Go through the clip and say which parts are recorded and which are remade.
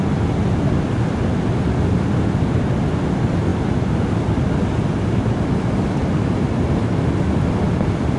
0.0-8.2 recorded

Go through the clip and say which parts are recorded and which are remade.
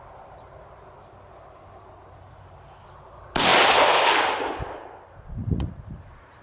0.0-5.4 recorded; 5.4-6.0 remade; 6.0-6.4 recorded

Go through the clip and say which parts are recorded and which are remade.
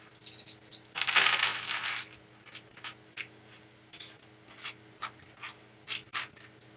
0.0-6.8 recorded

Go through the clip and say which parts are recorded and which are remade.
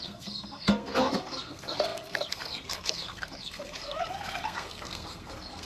0.0-5.7 remade